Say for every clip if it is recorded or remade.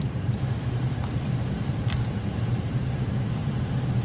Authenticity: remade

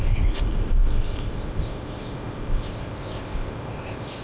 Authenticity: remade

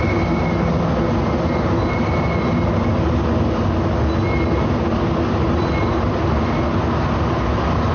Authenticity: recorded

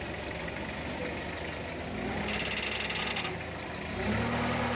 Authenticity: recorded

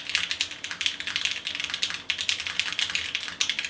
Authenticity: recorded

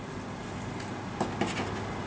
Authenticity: recorded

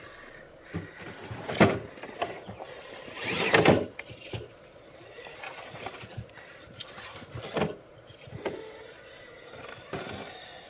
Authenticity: recorded